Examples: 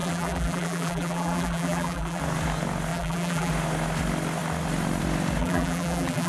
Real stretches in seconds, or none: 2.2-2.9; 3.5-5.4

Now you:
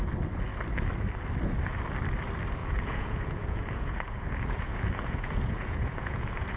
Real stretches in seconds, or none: 0.0-2.6

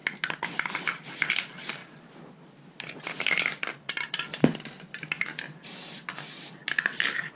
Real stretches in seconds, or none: 0.0-7.4

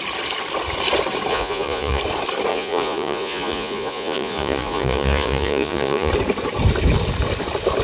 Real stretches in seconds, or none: 0.0-1.3; 2.0-2.5; 6.1-7.8

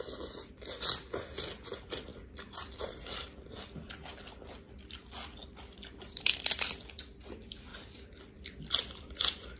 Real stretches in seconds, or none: 0.0-2.1; 3.9-5.4; 6.9-7.7

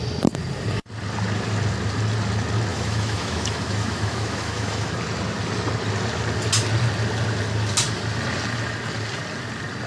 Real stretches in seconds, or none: 0.0-2.7; 4.9-9.9

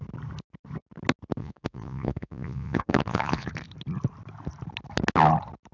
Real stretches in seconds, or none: 0.0-1.4; 3.5-5.7

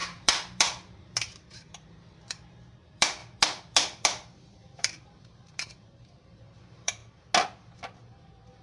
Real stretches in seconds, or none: 7.0-8.0